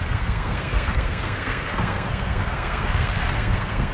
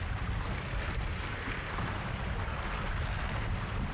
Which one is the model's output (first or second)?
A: first